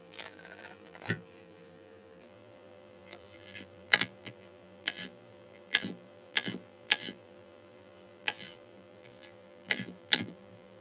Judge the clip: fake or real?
fake